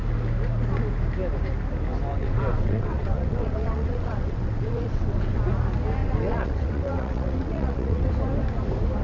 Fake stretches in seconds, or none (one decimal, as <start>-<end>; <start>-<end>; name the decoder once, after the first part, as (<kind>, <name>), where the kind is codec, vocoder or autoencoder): 2.1-5.4 (vocoder, WaveNeXt); 6.0-8.1